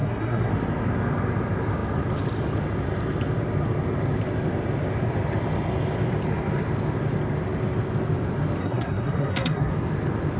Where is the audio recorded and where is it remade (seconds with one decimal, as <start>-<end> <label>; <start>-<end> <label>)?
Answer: 0.0-0.5 remade; 0.5-8.6 recorded; 8.6-9.7 remade; 9.7-10.4 recorded

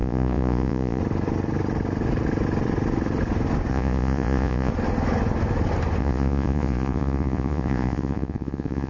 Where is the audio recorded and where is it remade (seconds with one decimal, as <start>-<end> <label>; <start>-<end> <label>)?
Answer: 0.0-1.0 remade; 1.0-3.7 recorded; 3.7-4.7 remade; 4.7-6.0 recorded; 6.0-8.9 remade

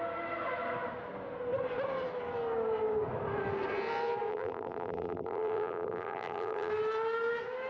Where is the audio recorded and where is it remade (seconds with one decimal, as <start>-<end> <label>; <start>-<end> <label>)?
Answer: 0.0-4.3 recorded; 4.3-6.7 remade; 6.7-7.7 recorded

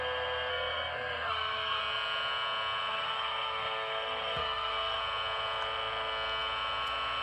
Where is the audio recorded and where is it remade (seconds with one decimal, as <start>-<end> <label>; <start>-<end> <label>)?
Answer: 0.0-0.5 recorded; 0.5-1.8 remade; 1.8-2.9 recorded; 2.9-5.0 remade; 5.0-7.2 recorded

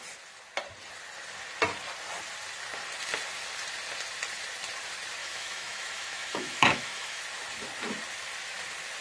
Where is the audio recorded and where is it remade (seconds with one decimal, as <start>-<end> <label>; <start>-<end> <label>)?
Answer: 0.0-5.2 recorded; 5.2-7.2 remade; 7.2-9.0 recorded

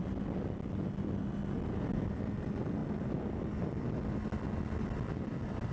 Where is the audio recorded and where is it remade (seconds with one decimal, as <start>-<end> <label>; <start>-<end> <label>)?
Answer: 0.0-5.7 recorded